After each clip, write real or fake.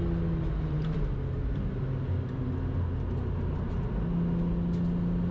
real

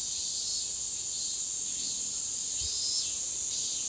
real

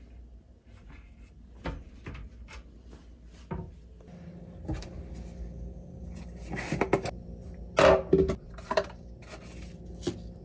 real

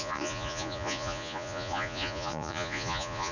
fake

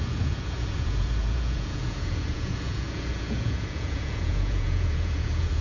fake